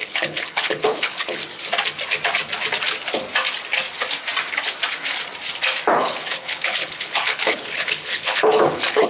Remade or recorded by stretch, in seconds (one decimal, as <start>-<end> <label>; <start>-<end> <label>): 0.0-1.4 remade; 1.4-5.9 recorded; 5.9-9.1 remade